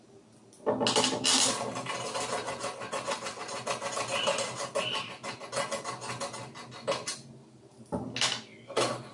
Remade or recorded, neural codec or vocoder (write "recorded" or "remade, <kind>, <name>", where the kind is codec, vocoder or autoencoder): recorded